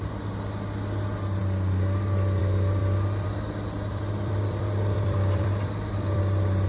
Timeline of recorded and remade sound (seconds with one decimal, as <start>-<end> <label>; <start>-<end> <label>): 0.0-2.8 recorded; 2.8-6.2 remade; 6.2-6.7 recorded